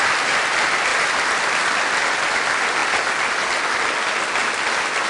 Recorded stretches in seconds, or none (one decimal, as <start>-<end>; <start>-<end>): 0.0-5.1